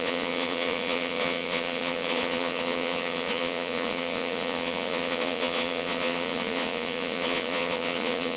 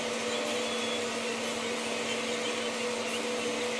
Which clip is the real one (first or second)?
second